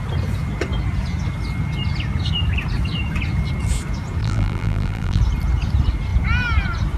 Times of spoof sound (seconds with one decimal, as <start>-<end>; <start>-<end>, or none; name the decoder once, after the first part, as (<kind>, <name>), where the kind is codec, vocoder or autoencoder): 4.2-5.2 (vocoder, BigVGAN v2)